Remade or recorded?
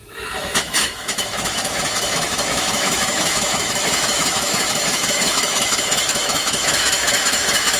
remade